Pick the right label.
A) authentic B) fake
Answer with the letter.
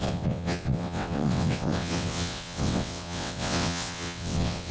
B